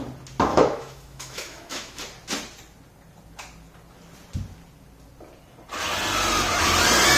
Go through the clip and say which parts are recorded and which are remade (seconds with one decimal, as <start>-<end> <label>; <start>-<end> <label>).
0.0-0.5 recorded; 0.5-2.0 remade; 2.0-7.2 recorded